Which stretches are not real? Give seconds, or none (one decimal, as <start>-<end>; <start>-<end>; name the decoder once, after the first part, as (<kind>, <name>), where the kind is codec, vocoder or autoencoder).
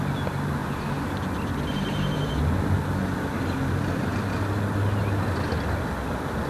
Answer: none